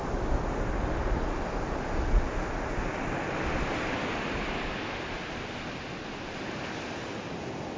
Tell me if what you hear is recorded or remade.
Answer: recorded